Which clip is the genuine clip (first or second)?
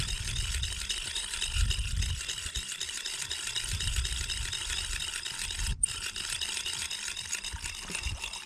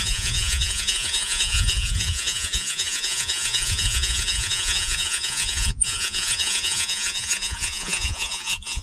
first